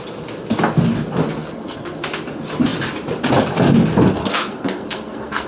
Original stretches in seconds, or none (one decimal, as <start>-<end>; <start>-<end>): 0.0-1.4; 2.0-4.2